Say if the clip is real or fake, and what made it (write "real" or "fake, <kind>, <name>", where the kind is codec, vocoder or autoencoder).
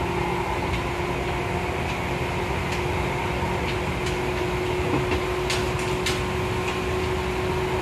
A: real